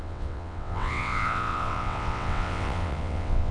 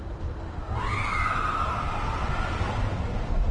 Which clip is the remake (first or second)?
first